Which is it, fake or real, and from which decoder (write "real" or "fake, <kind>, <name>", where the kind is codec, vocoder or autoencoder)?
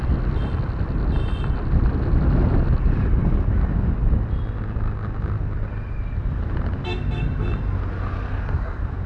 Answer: real